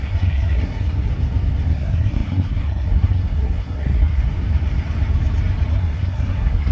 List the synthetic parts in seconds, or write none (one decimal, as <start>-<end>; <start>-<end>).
0.0-1.1; 1.7-4.2; 5.7-6.7